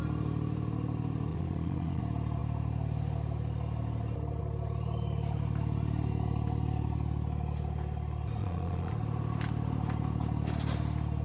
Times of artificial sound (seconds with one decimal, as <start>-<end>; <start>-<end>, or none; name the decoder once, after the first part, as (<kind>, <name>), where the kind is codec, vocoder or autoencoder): 1.3-2.0 (vocoder, Vocos); 8.4-8.9